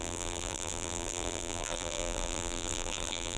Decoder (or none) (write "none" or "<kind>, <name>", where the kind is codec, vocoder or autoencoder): vocoder, BigVGAN v2